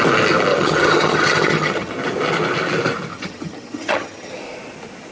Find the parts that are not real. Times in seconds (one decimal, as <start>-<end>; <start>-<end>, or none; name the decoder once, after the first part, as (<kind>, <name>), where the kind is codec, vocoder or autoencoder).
0.5-1.9 (vocoder, HiFi-GAN); 3.1-4.3

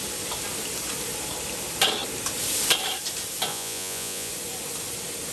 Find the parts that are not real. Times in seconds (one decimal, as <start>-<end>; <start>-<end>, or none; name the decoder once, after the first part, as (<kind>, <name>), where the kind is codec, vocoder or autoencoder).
3.5-4.3 (vocoder, Vocos)

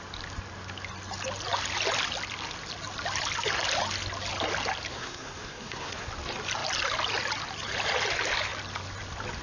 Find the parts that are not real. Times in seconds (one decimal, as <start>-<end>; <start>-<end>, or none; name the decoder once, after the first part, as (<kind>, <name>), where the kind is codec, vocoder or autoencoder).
4.9-6.1 (codec, SNAC)

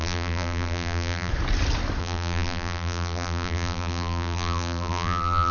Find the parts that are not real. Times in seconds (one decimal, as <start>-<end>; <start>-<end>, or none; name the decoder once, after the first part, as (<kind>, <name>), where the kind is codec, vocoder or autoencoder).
0.0-1.3 (vocoder, BigVGAN v2); 2.0-5.5

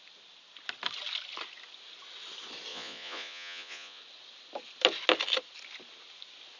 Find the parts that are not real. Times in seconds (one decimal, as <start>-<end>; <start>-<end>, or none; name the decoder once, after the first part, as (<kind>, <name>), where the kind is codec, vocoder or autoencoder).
2.7-4.0 (vocoder, Vocos)

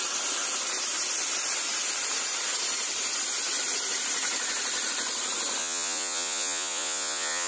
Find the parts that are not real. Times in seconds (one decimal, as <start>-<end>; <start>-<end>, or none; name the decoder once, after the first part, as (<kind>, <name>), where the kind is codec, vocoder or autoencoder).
5.6-7.5 (vocoder, Vocos)

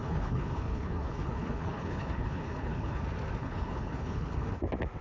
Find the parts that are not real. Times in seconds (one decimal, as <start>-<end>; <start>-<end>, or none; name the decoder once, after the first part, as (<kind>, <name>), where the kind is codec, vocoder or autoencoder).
0.0-3.0 (codec, HILCodec); 3.4-4.6